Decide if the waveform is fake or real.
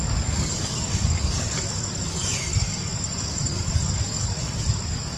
fake